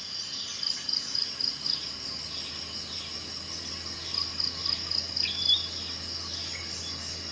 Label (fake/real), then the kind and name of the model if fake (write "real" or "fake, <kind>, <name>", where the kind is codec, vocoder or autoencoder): real